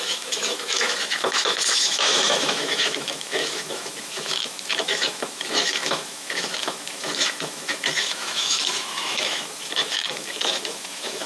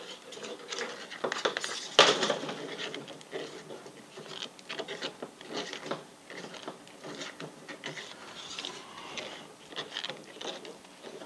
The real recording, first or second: second